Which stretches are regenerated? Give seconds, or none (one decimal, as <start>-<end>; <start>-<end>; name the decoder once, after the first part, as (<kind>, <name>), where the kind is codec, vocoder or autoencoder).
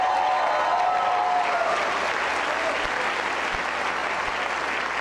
none